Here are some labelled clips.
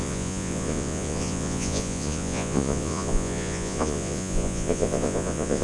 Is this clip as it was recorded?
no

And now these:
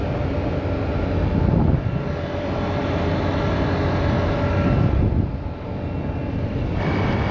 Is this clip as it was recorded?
yes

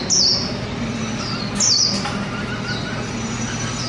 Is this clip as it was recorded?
yes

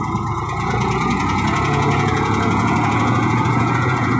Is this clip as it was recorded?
no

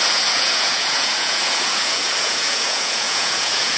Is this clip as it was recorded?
no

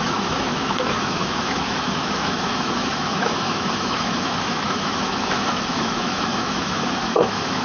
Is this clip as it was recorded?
no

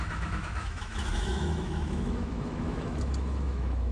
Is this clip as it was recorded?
no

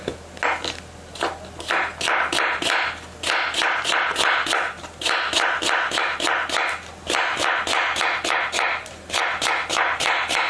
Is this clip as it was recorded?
yes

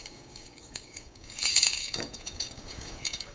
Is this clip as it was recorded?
no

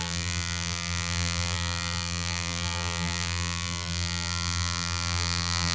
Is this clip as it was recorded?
no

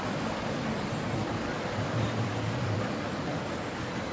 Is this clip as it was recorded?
no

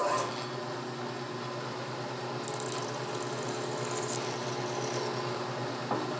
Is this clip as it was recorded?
yes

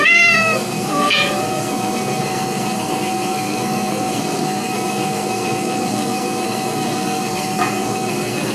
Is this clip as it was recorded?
no